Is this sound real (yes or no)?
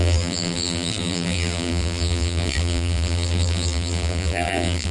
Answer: no